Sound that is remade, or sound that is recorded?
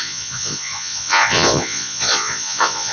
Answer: remade